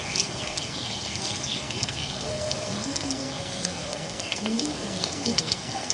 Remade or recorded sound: remade